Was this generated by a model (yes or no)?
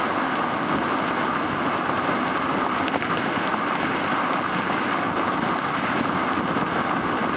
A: no